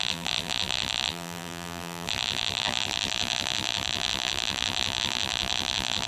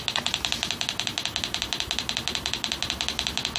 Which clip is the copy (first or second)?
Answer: first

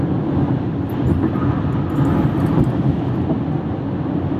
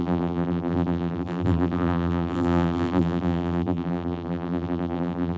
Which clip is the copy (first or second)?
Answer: second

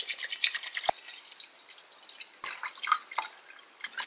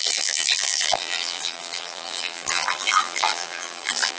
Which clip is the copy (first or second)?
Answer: second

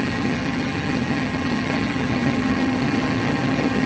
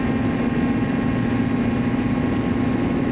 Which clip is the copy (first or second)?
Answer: first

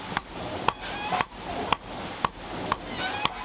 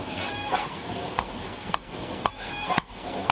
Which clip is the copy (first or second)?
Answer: second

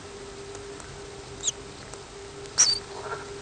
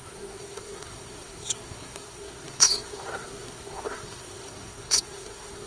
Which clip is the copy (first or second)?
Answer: second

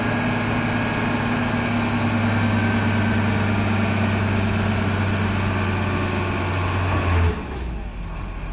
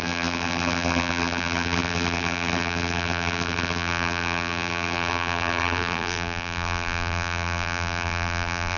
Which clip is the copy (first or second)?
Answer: second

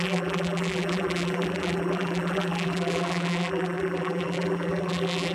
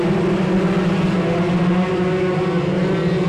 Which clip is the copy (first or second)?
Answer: first